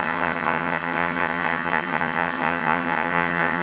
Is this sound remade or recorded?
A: remade